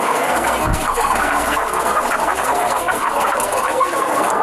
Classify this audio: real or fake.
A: fake